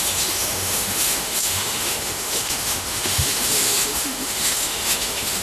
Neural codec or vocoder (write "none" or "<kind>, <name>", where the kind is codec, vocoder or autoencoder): autoencoder, DAC-VAE